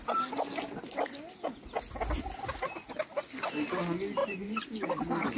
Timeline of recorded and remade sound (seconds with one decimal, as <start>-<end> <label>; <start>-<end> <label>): 0.0-4.2 recorded; 4.2-5.0 remade; 5.0-5.4 recorded